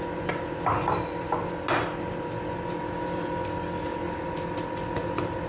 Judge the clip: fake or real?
real